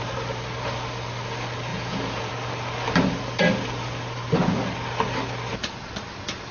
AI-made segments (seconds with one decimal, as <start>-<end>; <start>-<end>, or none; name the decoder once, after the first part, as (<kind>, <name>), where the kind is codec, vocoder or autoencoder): 1.7-2.3 (vocoder, Vocos)